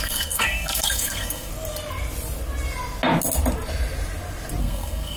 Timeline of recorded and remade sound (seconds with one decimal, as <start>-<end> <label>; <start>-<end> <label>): 0.0-1.5 remade; 1.5-4.6 recorded; 4.6-5.2 remade